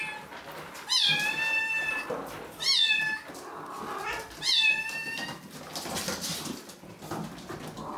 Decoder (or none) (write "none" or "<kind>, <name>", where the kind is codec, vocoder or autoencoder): none